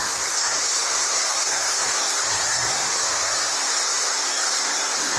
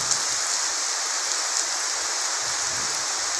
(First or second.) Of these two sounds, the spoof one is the first